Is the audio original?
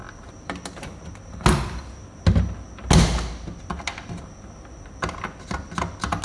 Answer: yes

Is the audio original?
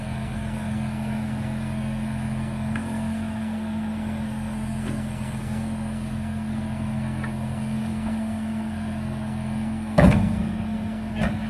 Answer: no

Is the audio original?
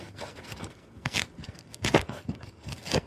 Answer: no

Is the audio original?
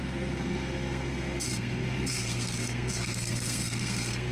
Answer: no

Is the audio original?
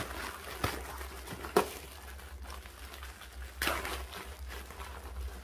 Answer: yes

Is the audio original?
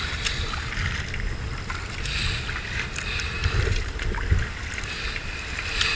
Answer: yes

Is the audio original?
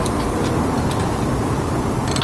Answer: yes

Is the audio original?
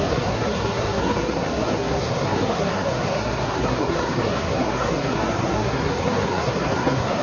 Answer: no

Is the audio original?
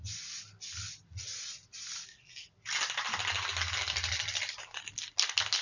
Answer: yes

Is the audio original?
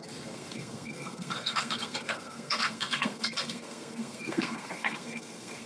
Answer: no